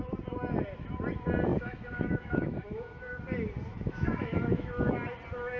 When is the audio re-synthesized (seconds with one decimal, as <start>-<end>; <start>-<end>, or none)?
1.5-3.2; 3.7-4.9